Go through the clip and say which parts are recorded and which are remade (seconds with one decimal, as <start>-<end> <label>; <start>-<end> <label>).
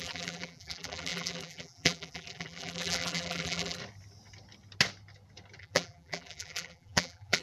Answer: 0.0-3.8 remade; 3.8-5.6 recorded; 5.6-7.4 remade